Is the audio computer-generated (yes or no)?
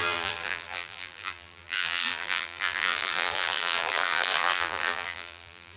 yes